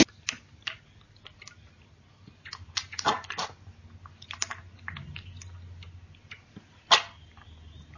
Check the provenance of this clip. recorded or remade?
recorded